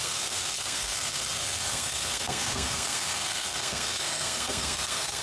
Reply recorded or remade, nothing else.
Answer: remade